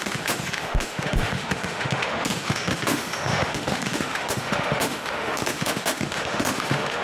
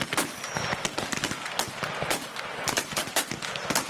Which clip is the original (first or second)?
second